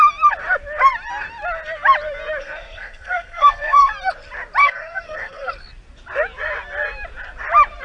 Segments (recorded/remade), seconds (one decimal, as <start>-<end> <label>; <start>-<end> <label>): 0.0-2.4 recorded; 2.4-3.9 remade; 3.9-4.6 recorded; 4.6-5.5 remade; 5.5-7.8 recorded